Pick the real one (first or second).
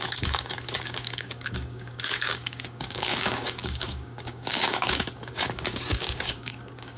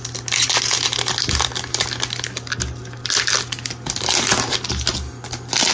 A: second